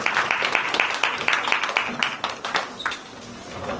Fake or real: real